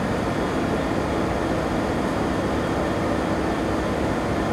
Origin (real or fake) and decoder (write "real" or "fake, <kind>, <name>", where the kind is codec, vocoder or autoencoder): real